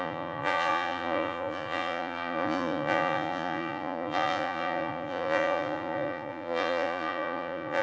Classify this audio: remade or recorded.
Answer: remade